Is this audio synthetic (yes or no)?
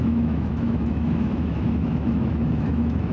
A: yes